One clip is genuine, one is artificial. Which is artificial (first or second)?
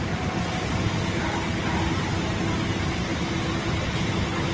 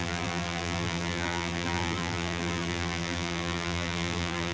second